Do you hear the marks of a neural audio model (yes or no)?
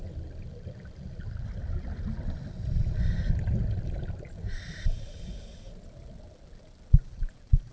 no